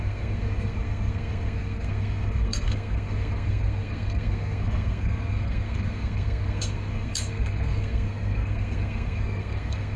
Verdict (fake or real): fake